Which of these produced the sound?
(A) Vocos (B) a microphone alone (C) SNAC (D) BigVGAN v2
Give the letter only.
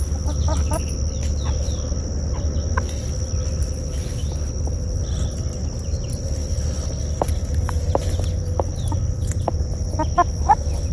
B